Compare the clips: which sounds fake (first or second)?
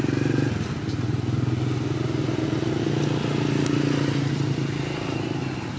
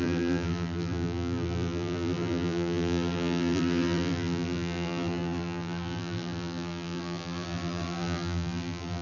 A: second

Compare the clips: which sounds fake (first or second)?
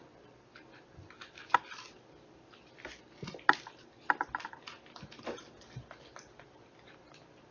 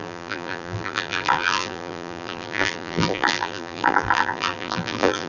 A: second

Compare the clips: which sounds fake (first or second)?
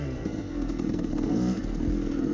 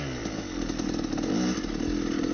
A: first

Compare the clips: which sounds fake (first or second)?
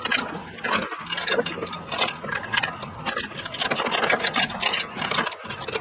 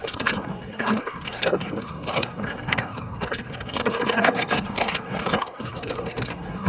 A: second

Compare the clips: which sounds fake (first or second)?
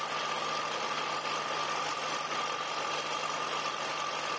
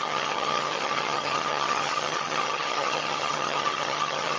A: second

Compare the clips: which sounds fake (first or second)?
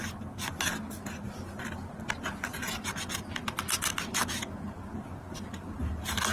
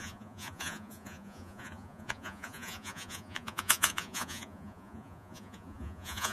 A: second